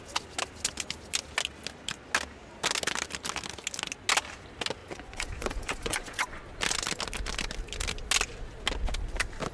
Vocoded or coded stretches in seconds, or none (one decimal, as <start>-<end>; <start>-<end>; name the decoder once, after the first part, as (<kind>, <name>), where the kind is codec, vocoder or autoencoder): 4.8-6.4 (vocoder, Vocos)